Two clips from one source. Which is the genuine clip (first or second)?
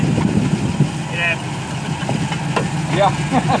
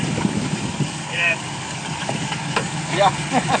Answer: first